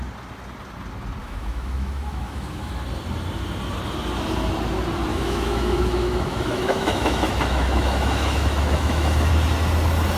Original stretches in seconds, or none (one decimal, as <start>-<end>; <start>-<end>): 0.0-1.2; 2.7-5.1; 9.3-10.2